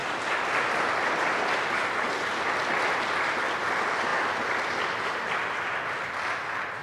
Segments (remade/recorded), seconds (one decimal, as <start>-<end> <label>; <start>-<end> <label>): 0.0-6.8 recorded